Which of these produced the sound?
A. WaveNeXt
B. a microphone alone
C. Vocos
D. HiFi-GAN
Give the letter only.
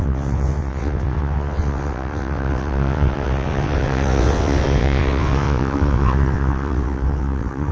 A